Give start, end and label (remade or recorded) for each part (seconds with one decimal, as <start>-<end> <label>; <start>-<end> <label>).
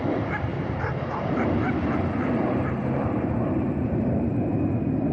0.0-0.5 remade; 0.5-1.1 recorded; 1.1-4.4 remade; 4.4-5.1 recorded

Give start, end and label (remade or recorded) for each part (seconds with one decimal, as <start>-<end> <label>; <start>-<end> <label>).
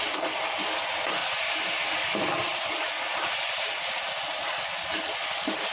0.0-1.2 recorded; 1.2-3.1 remade; 3.1-5.7 recorded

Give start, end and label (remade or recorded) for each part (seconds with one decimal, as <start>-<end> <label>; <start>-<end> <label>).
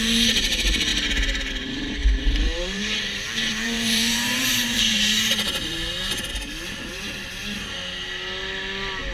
0.0-0.9 remade; 0.9-1.5 recorded; 1.5-7.4 remade; 7.4-9.1 recorded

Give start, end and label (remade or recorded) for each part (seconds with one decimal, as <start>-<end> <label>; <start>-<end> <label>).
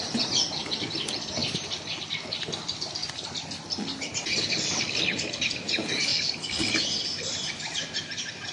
0.0-6.1 remade; 6.1-7.2 recorded; 7.2-8.5 remade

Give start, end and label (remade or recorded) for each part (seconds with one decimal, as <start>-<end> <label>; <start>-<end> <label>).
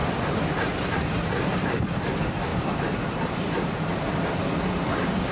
0.0-1.6 remade; 1.6-2.5 recorded; 2.5-4.2 remade; 4.2-5.3 recorded